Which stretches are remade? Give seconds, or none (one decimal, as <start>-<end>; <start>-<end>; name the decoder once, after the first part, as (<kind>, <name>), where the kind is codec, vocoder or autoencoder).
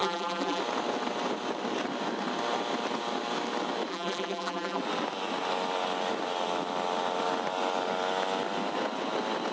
0.0-0.6 (vocoder, BigVGAN v2); 3.9-4.8